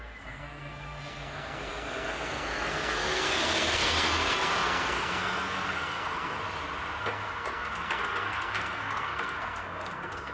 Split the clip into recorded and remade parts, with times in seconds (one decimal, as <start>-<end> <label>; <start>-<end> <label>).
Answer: 0.0-6.4 remade; 6.4-7.0 recorded; 7.0-10.3 remade